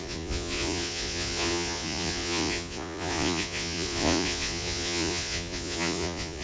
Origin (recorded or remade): remade